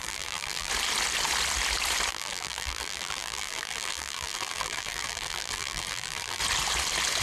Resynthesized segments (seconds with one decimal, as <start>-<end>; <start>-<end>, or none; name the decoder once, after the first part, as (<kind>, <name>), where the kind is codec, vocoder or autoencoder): 0.0-0.7 (vocoder, BigVGAN v2); 2.1-6.4

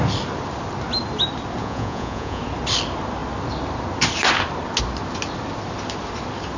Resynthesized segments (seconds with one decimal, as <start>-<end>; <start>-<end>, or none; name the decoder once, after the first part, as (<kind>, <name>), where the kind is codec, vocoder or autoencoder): 1.6-2.4 (vocoder, Vocos)